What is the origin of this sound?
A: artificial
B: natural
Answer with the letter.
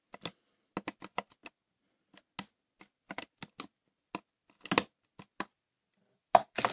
B